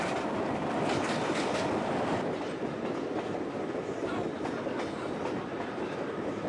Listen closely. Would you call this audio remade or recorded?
remade